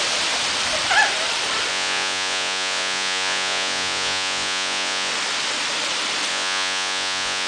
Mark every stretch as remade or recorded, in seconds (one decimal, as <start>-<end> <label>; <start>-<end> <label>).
0.0-1.7 recorded; 1.7-5.1 remade; 5.1-6.3 recorded; 6.3-7.5 remade